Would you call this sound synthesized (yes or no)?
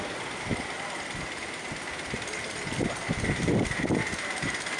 no